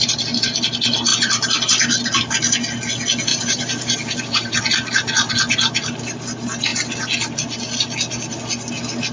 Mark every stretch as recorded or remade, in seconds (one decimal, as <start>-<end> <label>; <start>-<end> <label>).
0.0-1.1 recorded; 1.1-1.6 remade; 1.6-3.3 recorded; 3.3-4.6 remade; 4.6-9.1 recorded